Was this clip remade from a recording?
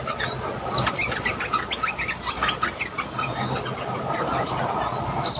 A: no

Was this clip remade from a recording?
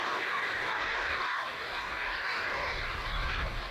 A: yes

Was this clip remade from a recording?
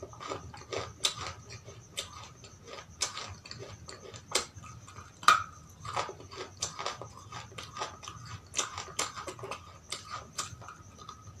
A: no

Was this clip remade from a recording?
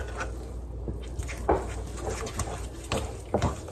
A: no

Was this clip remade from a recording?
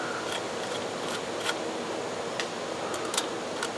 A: no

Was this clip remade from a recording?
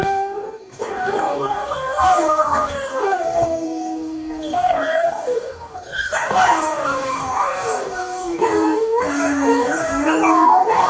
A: yes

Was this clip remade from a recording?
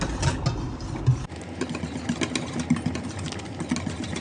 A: no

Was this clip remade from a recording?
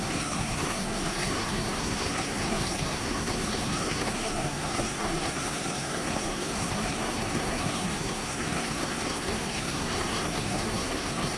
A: yes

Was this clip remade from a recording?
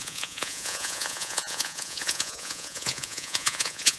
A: yes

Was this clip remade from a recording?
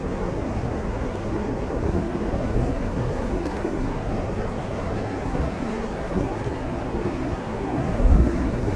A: yes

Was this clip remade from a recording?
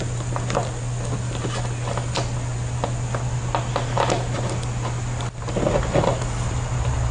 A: no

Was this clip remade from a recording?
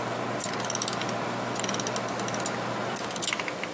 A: no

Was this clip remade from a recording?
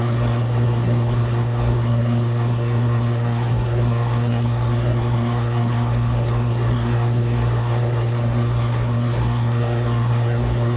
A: yes